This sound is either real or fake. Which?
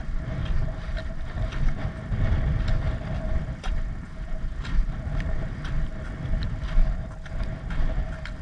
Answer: real